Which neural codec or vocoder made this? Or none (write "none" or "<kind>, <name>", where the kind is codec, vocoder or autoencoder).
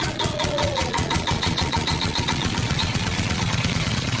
vocoder, Vocos